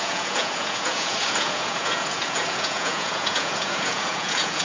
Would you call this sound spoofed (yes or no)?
yes